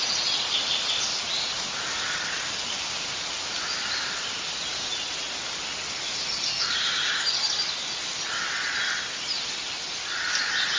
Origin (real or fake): real